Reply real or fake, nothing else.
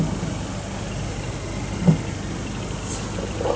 real